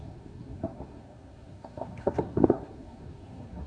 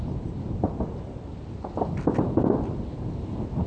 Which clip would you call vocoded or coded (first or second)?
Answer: first